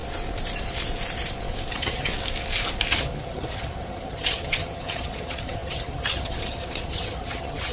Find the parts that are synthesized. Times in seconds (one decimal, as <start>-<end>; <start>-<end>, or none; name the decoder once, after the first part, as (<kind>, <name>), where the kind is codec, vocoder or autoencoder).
1.7-2.1 (vocoder, HiFi-GAN); 2.9-7.7